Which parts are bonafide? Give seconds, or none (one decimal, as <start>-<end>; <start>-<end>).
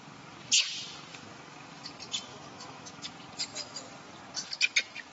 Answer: 0.0-1.1; 1.9-2.3; 3.1-5.1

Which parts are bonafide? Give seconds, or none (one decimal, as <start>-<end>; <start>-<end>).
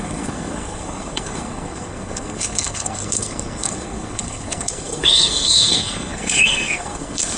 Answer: none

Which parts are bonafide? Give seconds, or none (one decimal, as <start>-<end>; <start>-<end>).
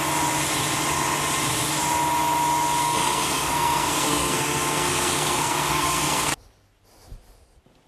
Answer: 0.0-2.8; 6.4-7.9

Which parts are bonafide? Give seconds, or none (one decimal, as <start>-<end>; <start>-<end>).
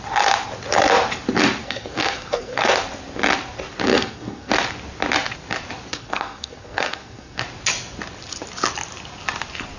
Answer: 0.0-1.6; 2.7-3.9; 4.5-5.9; 7.4-9.8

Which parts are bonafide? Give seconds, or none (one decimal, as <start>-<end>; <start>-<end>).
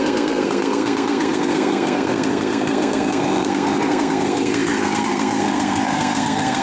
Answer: none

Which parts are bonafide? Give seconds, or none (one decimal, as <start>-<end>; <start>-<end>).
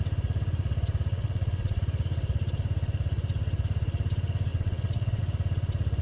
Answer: 0.0-1.1; 1.8-4.5; 5.2-6.0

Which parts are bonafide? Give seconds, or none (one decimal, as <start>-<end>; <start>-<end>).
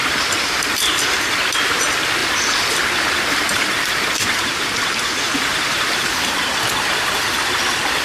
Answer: 0.9-2.2; 6.5-8.0